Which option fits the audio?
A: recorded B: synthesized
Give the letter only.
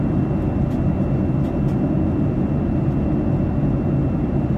A